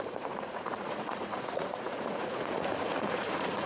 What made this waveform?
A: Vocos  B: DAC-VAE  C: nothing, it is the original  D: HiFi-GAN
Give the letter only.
A